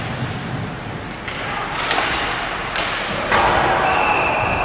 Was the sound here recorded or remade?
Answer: recorded